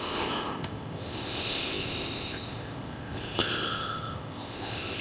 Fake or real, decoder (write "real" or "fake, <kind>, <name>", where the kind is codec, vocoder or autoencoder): fake, codec, ZipCodec